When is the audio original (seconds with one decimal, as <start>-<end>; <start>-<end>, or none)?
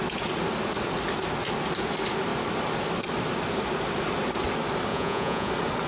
0.0-4.9; 5.5-5.9